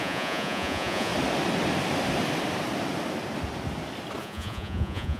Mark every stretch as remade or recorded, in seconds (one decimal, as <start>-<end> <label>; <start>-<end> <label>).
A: 0.0-1.1 remade; 1.1-4.2 recorded; 4.2-5.2 remade